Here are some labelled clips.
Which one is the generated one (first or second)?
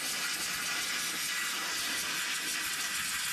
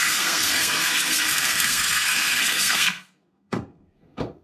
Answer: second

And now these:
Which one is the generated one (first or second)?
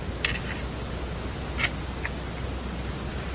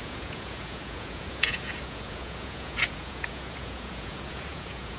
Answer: second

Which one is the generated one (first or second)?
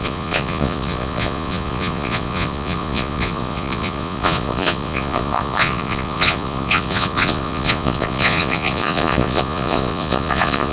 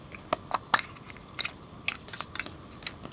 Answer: first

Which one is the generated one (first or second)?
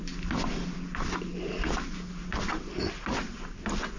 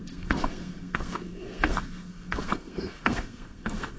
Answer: second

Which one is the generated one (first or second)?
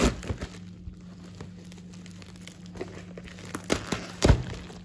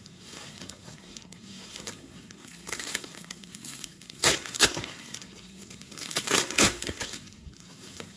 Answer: second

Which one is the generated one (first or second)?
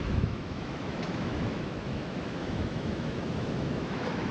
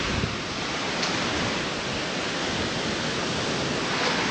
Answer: first